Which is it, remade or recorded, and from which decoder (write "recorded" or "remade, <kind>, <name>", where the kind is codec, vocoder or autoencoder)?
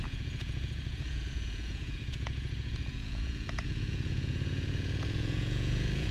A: remade, vocoder, Vocos